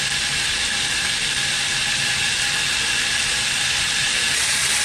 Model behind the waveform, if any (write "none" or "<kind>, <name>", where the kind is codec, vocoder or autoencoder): none